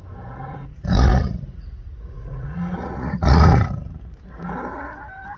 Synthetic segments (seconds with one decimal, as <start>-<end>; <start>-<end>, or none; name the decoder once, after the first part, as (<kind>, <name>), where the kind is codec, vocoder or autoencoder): 0.5-3.7 (vocoder, Vocos)

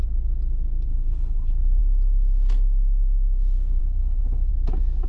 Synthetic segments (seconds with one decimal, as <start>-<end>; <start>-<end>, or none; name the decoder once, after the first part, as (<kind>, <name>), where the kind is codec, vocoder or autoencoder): 0.9-1.8 (codec, HILCodec); 3.8-4.5

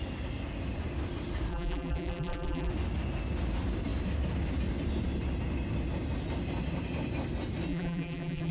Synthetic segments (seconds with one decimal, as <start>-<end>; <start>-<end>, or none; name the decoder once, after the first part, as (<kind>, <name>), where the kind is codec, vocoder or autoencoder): 1.5-2.7 (vocoder, BigVGAN v2); 7.7-8.5

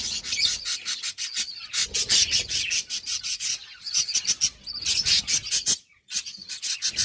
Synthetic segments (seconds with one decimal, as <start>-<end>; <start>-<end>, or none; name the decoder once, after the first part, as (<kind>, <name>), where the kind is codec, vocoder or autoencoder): 0.0-1.8 (vocoder, Vocos); 3.2-4.1; 4.8-7.0

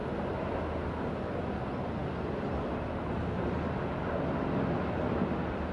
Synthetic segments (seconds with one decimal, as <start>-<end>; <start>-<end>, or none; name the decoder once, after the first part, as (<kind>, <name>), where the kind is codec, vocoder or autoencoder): none

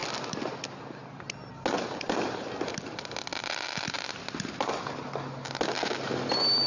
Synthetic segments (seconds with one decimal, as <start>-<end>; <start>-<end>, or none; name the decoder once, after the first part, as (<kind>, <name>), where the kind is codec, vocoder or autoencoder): none

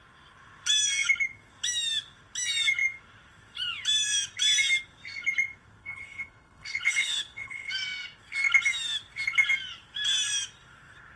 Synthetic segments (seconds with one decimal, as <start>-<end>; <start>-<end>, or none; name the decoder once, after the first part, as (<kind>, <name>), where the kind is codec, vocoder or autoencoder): 5.8-7.7 (codec, HILCodec)

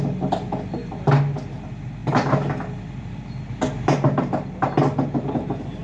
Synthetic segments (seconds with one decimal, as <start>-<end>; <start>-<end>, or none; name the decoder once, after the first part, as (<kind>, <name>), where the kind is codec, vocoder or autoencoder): none